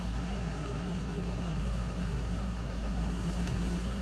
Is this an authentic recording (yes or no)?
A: no